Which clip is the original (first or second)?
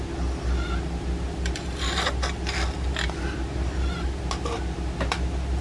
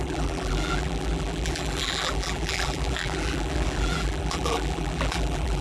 first